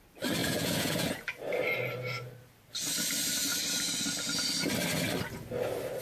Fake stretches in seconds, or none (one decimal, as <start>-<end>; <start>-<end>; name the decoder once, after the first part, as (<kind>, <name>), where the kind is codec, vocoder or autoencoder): 0.4-1.3 (vocoder, Vocos)